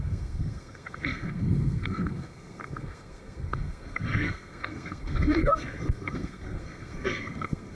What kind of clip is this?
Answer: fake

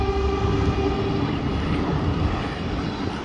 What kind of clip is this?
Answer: real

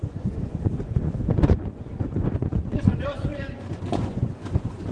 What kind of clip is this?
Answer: fake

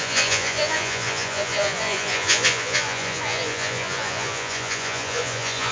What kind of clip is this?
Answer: fake